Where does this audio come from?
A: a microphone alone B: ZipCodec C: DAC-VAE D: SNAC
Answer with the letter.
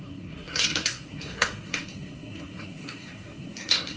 D